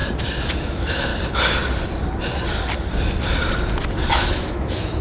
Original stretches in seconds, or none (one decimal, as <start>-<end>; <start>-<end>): 0.0-0.6; 1.1-4.1